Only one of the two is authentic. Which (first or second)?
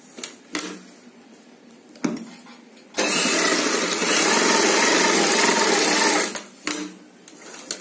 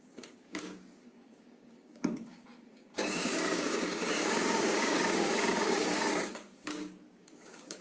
first